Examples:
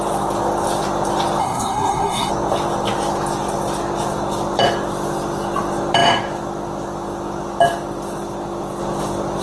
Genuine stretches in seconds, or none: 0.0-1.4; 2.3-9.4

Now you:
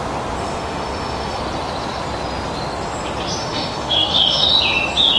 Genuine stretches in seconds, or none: 0.0-0.4; 1.4-3.4; 4.5-5.2

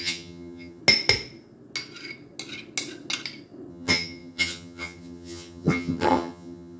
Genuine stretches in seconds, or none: 0.8-3.7

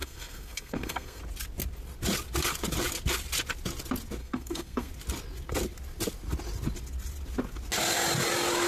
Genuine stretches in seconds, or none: 1.2-4.2; 4.9-8.7

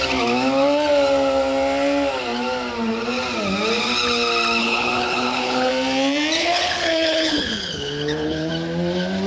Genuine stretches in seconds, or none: 0.0-4.6; 5.7-6.4; 8.5-9.3

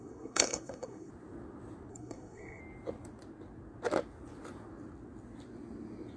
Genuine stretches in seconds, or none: 1.1-1.9; 2.6-6.2